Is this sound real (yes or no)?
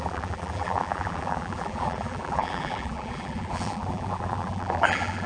no